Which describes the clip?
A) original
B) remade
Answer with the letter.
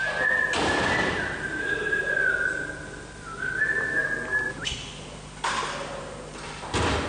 A